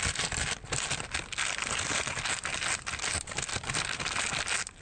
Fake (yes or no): no